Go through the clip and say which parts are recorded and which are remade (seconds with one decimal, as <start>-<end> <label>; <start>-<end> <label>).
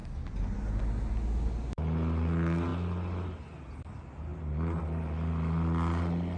0.0-6.4 recorded